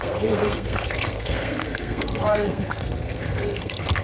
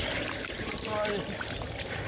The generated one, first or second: first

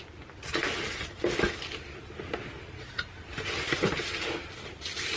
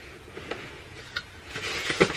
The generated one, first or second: second